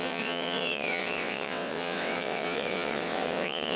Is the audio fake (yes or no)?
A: yes